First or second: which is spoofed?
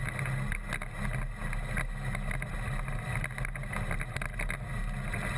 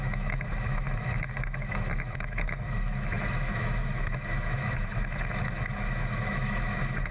second